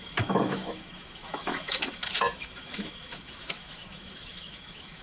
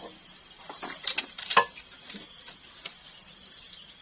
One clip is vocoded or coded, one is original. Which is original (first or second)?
second